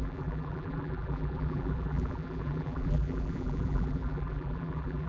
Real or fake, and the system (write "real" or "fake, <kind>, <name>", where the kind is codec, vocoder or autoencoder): fake, vocoder, BigVGAN v2